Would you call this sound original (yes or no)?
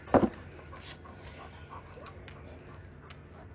yes